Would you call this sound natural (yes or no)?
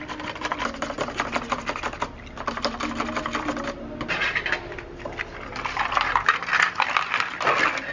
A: yes